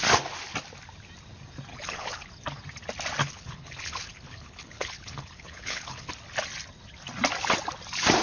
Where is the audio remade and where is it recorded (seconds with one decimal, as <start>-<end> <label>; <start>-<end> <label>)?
0.0-1.7 recorded; 1.7-2.3 remade; 2.3-3.2 recorded; 3.2-6.1 remade; 6.1-8.2 recorded